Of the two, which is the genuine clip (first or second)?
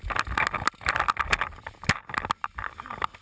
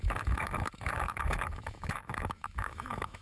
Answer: first